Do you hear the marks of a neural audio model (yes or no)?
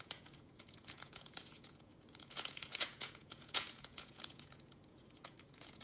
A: yes